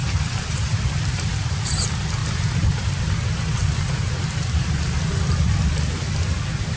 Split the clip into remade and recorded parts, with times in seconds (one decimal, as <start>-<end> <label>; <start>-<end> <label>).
0.0-1.3 remade; 1.3-2.2 recorded; 2.2-2.9 remade; 2.9-3.6 recorded; 3.6-5.4 remade; 5.4-6.8 recorded